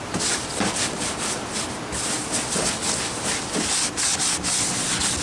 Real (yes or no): yes